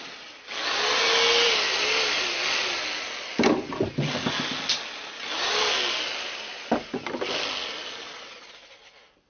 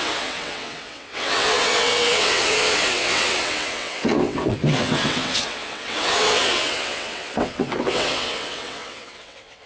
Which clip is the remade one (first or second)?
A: second